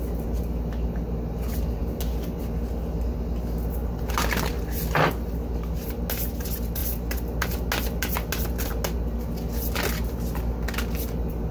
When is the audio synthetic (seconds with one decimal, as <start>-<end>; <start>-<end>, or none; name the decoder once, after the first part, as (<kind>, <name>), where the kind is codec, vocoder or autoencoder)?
none